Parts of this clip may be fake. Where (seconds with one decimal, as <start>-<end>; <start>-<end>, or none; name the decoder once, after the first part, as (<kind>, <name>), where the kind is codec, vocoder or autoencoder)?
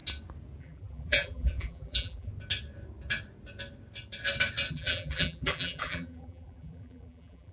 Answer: 0.6-2.3 (vocoder, BigVGAN v2); 4.7-7.5